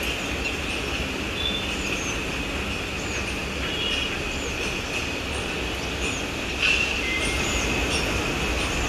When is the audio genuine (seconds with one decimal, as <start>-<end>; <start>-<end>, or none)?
0.0-8.9